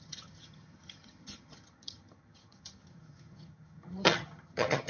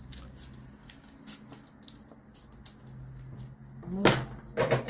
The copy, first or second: first